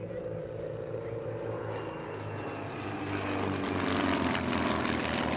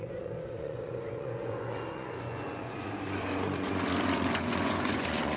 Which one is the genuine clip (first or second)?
first